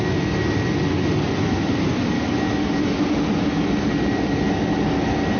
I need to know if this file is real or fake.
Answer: real